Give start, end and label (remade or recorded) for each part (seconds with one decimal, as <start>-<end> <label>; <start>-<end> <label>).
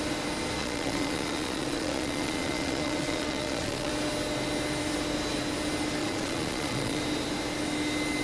0.0-0.6 recorded; 0.6-3.9 remade; 3.9-6.0 recorded; 6.0-7.0 remade; 7.0-8.2 recorded